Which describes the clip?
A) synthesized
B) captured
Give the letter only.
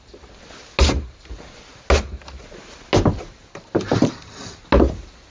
B